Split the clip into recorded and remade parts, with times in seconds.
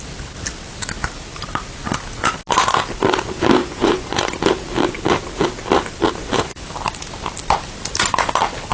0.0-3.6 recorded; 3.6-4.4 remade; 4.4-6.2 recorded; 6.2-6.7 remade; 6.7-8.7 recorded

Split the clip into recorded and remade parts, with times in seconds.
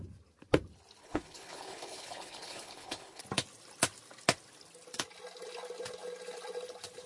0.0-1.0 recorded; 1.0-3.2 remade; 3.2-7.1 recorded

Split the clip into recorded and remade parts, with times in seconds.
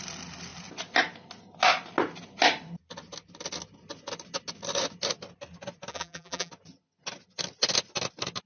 0.0-5.9 recorded; 5.9-6.5 remade; 6.5-8.5 recorded